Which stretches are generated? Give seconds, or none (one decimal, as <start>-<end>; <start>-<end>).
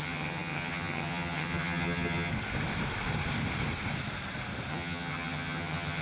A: 0.0-2.3; 4.7-6.0